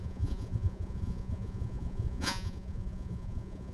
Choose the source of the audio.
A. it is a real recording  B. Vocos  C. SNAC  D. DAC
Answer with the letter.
B